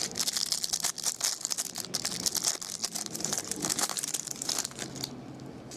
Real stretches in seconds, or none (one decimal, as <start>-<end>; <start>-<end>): 0.0-2.8; 4.5-5.8